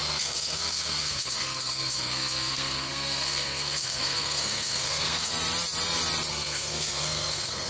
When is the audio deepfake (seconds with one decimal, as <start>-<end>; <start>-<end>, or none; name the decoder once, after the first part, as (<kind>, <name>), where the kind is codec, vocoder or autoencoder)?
0.0-5.3 (codec, SNAC); 6.3-7.7